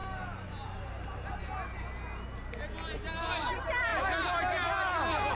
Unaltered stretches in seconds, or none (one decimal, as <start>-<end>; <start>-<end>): 0.0-3.2; 3.9-5.3